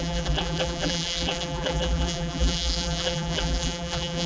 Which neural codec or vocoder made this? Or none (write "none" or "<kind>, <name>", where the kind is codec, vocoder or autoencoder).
vocoder, BigVGAN v2